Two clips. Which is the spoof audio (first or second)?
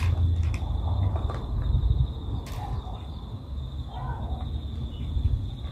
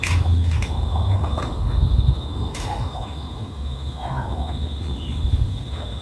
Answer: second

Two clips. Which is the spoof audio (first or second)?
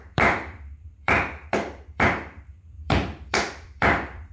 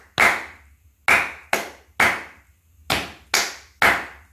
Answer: first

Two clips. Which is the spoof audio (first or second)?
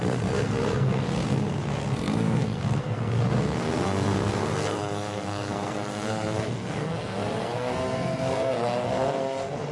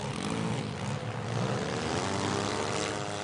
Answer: first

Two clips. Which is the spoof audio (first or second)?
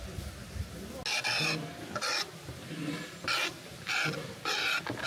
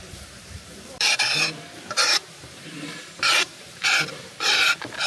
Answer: second